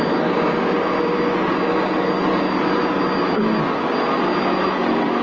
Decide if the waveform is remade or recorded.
recorded